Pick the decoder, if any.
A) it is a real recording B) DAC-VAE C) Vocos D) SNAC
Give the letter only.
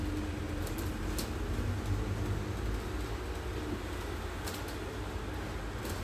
A